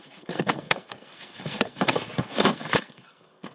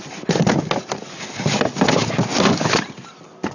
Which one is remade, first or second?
first